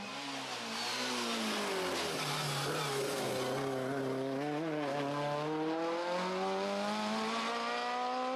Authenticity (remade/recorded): recorded